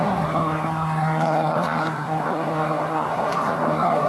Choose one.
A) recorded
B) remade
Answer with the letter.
B